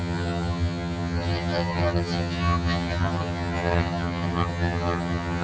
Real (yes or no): no